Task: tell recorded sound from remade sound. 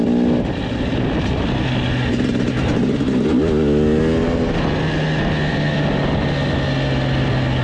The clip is recorded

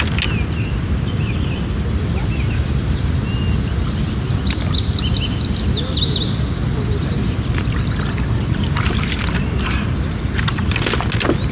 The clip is recorded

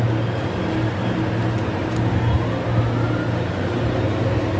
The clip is recorded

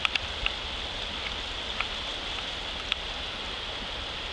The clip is recorded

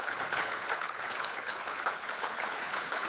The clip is remade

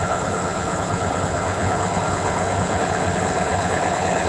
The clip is remade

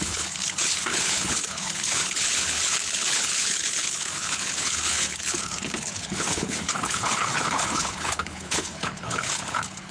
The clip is remade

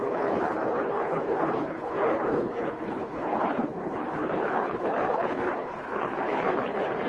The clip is remade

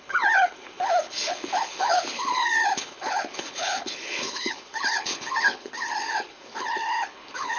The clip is remade